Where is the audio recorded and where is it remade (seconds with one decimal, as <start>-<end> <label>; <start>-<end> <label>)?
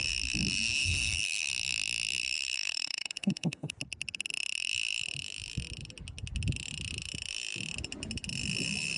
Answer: 0.0-0.8 recorded; 0.8-1.5 remade; 1.5-2.2 recorded; 2.2-3.7 remade; 3.7-9.0 recorded